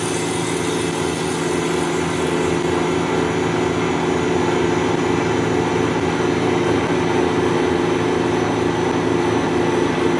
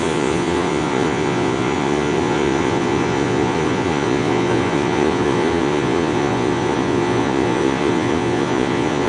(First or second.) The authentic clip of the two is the first